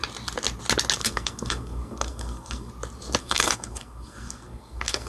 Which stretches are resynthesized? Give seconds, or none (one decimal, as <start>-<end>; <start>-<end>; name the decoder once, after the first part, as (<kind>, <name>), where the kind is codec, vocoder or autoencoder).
1.0-2.7 (codec, SNAC); 3.2-5.1